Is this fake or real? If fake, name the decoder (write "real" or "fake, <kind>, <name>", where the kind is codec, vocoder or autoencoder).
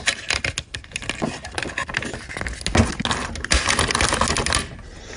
real